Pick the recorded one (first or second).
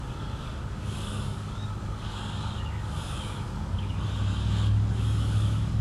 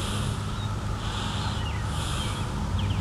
second